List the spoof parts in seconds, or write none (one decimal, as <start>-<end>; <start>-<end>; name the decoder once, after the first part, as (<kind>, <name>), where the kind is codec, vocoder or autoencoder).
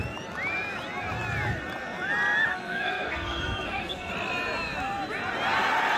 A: 2.5-4.1 (codec, SNAC)